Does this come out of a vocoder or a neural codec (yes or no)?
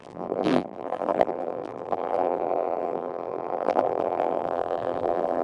yes